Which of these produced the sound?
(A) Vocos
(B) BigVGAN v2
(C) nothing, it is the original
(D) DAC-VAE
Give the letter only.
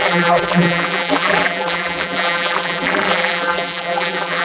B